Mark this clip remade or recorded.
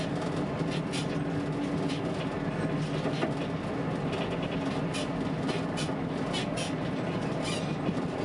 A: recorded